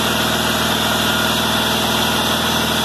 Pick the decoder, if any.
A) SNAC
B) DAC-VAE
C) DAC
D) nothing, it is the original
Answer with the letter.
D